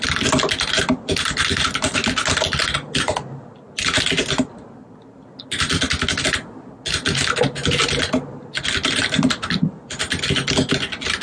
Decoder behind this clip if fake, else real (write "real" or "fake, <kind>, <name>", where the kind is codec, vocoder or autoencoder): real